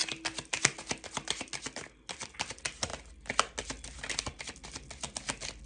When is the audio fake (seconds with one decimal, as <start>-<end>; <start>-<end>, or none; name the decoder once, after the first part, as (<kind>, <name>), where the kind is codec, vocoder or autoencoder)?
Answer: none